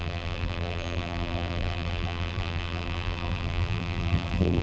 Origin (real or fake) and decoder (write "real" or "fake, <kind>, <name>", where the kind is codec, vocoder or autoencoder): fake, vocoder, BigVGAN v2